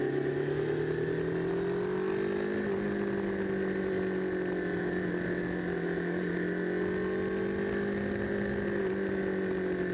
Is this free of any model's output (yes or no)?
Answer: yes